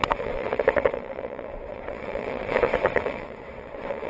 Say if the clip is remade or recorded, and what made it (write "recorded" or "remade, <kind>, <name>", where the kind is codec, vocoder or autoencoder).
remade, vocoder, WaveNeXt